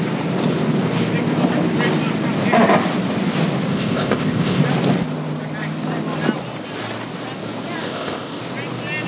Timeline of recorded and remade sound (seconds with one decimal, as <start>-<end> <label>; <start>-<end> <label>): 0.0-3.7 recorded; 3.7-4.6 remade; 4.6-7.8 recorded; 7.8-8.4 remade; 8.4-9.1 recorded